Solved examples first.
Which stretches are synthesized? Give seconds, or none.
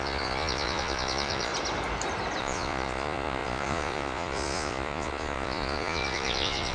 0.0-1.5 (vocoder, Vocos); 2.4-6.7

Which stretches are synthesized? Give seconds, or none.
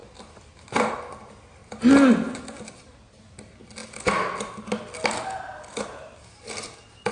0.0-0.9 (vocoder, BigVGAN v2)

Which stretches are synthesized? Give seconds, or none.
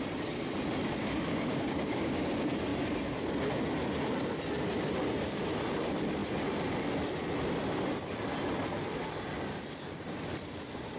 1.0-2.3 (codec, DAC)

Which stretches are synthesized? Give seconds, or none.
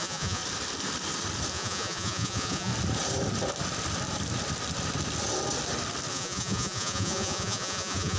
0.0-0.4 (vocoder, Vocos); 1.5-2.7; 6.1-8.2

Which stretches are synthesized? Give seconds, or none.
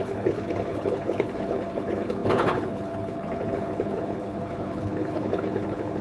0.0-6.0 (codec, HILCodec)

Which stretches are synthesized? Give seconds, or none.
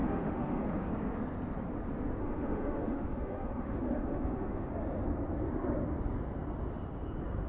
0.0-0.9 (autoencoder, DAC-VAE); 2.2-4.7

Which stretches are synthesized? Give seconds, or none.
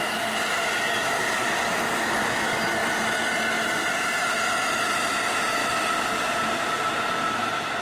1.4-2.3 (codec, DAC)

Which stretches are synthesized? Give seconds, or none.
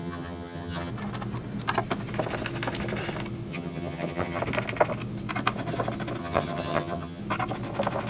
0.0-0.9 (vocoder, HiFi-GAN); 3.5-4.4; 6.2-7.2